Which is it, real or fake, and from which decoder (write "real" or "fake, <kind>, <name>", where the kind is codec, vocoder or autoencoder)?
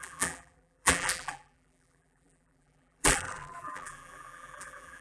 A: fake, vocoder, BigVGAN v2